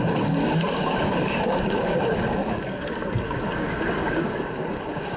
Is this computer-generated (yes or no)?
yes